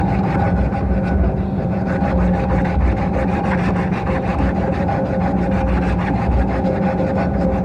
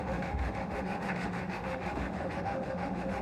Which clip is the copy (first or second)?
second